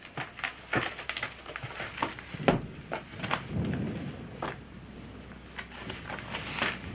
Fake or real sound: real